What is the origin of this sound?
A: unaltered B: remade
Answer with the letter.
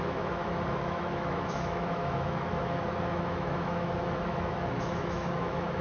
B